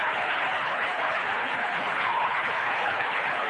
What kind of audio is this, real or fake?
fake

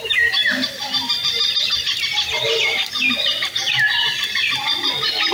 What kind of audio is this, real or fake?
real